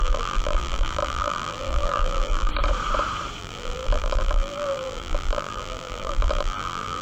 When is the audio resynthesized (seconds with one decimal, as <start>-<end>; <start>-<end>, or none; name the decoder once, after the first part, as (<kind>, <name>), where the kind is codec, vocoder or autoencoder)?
0.0-2.5 (vocoder, BigVGAN v2); 3.4-7.0